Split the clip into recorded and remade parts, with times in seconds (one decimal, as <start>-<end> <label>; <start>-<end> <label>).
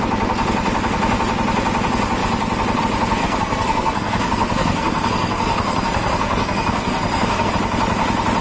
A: 0.0-3.2 recorded; 3.2-7.5 remade; 7.5-8.4 recorded